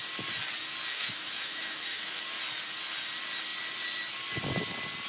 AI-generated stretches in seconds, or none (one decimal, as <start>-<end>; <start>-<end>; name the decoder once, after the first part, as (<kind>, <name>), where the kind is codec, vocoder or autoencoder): 0.9-2.2 (autoencoder, DAC-VAE)